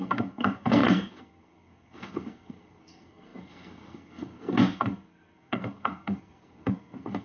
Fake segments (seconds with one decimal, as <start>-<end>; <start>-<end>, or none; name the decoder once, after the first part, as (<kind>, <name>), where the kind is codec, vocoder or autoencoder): 0.0-7.2 (codec, SNAC)